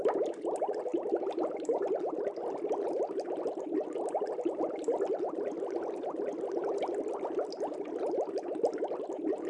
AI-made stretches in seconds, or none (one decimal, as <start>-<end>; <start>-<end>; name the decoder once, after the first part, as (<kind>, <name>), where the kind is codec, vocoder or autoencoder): none